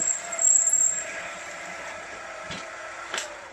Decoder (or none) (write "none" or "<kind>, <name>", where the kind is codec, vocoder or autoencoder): vocoder, BigVGAN v2